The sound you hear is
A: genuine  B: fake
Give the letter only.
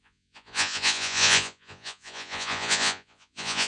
B